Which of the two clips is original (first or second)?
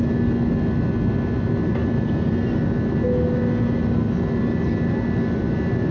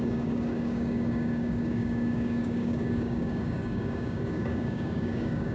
first